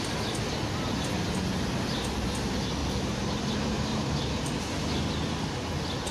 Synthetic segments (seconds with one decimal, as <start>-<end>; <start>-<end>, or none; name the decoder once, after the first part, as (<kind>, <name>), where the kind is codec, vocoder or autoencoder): 2.8-3.5 (vocoder, BigVGAN v2); 3.9-4.6